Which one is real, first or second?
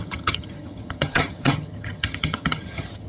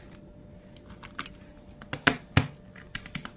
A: second